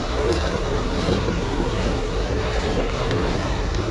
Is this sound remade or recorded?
remade